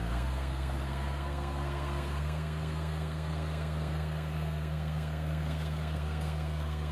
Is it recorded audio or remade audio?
remade